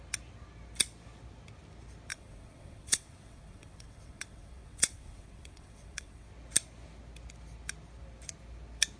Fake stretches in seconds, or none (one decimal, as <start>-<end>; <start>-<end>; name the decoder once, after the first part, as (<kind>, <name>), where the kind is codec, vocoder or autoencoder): 2.1-6.3 (vocoder, WaveNeXt)